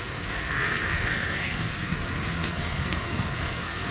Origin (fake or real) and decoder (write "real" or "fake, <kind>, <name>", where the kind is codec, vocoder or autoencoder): fake, codec, SNAC